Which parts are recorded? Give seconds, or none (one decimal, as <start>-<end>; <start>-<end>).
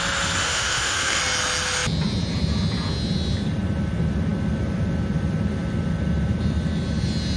0.0-0.4; 1.2-7.4